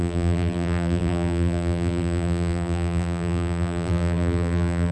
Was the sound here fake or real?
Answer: fake